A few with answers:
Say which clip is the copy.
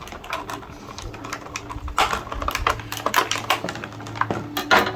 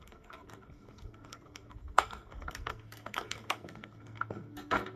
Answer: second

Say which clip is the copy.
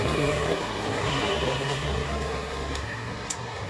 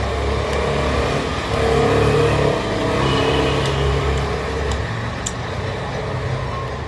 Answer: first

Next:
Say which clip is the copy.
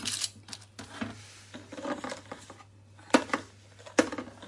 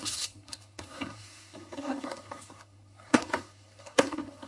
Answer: second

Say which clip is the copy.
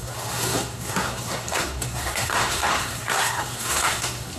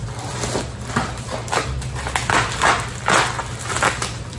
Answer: first